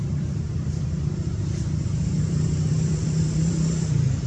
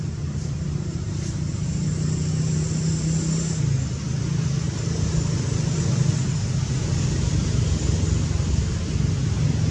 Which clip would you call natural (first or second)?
second